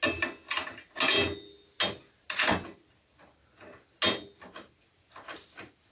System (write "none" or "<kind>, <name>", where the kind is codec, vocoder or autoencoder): none